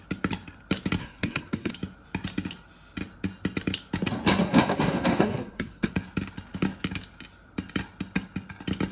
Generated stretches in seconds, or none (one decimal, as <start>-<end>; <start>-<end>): 1.0-1.7; 4.4-5.9